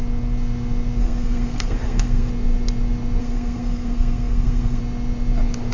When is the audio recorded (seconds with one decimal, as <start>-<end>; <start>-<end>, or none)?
0.0-1.0; 2.3-3.2; 4.8-5.7